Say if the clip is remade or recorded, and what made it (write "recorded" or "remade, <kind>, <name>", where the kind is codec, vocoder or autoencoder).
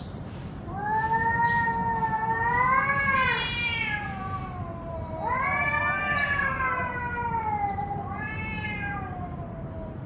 remade, vocoder, BigVGAN v2